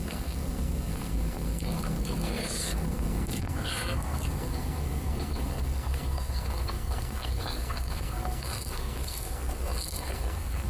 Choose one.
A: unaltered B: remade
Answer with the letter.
B